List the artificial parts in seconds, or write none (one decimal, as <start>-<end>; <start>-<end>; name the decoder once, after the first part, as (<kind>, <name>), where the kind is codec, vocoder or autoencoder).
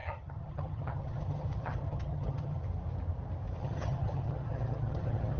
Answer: 0.0-2.6 (vocoder, HiFi-GAN); 3.6-5.4